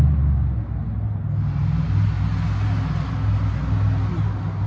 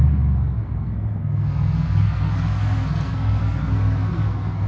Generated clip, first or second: second